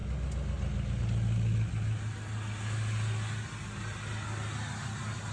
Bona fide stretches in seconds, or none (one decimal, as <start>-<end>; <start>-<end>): 0.0-5.3